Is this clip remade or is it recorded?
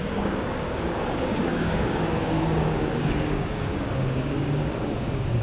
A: remade